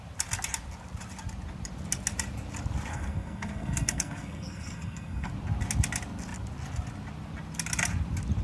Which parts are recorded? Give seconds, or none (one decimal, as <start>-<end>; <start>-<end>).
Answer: 0.0-2.9; 5.3-8.4